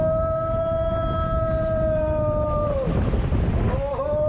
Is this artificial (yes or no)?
no